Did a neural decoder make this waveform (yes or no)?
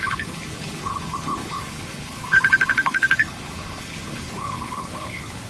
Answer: yes